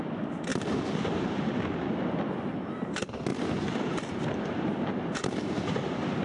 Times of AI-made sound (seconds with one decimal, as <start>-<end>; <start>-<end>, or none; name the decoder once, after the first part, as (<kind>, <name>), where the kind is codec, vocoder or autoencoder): 3.3-5.2 (vocoder, BigVGAN v2)